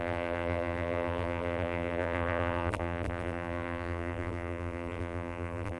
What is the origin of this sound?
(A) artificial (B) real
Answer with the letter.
A